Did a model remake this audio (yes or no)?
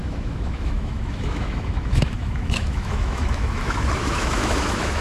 yes